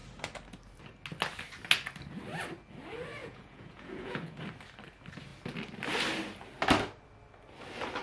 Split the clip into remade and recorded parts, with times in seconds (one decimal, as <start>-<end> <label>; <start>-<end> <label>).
0.0-3.2 recorded; 3.2-4.4 remade; 4.4-8.0 recorded